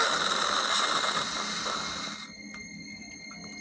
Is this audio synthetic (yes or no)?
no